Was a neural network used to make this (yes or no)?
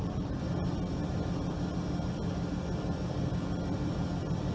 no